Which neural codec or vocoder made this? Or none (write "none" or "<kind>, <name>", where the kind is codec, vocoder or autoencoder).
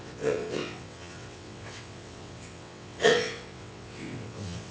vocoder, WaveNeXt